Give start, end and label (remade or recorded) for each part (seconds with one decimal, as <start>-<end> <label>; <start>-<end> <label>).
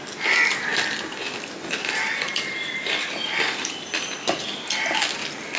0.0-0.7 recorded; 0.7-4.1 remade; 4.1-5.6 recorded